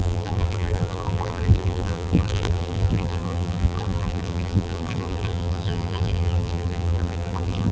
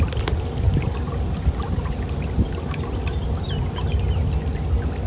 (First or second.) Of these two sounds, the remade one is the first